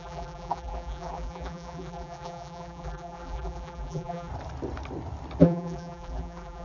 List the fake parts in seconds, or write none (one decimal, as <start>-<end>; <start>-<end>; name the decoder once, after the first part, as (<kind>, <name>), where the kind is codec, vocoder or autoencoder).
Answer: 0.0-4.3 (vocoder, BigVGAN v2); 5.4-6.6